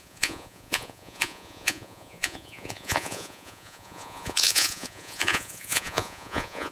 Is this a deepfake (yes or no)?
yes